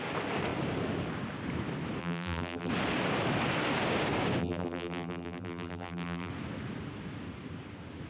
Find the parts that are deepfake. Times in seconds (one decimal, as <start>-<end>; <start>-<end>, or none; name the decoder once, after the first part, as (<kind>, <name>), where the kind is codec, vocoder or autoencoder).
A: 2.0-2.7 (vocoder, BigVGAN v2); 4.4-6.3